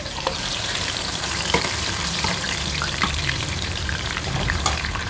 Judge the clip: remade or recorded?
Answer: remade